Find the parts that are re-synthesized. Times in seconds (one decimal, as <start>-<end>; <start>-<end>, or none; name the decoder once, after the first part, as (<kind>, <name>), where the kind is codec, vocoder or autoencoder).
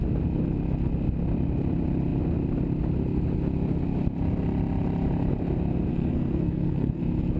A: 5.9-7.0 (codec, SNAC)